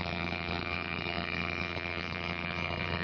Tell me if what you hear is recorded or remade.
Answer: remade